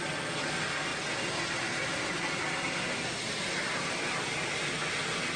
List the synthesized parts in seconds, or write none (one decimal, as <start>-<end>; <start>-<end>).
none